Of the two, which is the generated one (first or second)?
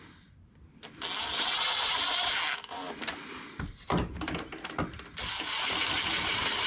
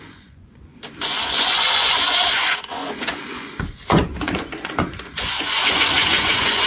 second